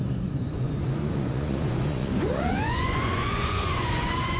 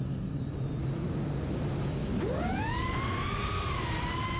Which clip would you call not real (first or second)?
first